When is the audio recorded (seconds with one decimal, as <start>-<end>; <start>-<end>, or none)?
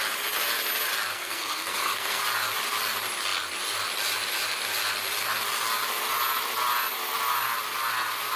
0.0-1.1; 2.2-8.4